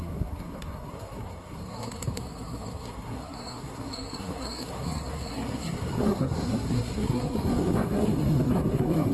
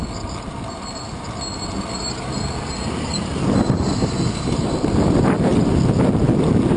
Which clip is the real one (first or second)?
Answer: second